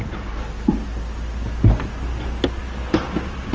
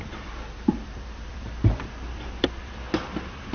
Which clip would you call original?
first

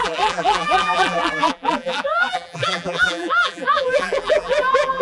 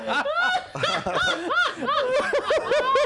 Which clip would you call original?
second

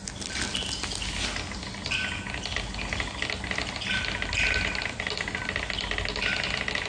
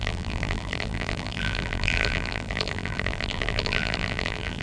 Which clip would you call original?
first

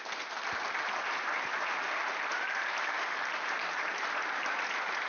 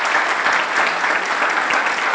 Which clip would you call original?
second